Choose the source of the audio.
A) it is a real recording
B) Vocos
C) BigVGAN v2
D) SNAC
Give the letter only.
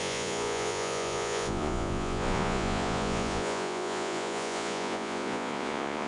B